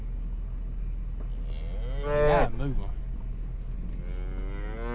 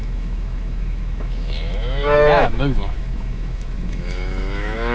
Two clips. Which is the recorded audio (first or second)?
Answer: first